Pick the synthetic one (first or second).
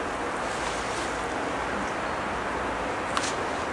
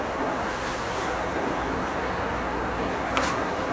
second